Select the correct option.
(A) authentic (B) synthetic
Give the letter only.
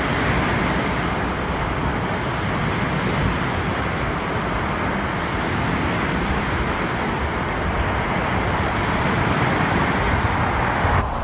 A